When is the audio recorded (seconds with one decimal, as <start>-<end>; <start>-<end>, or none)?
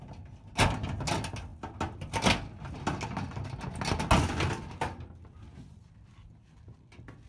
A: 0.0-7.3